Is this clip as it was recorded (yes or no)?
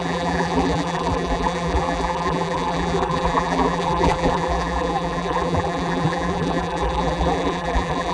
no